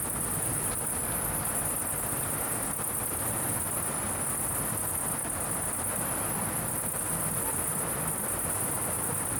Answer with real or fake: real